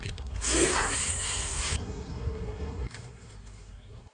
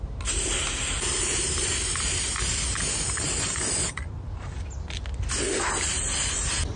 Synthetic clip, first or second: first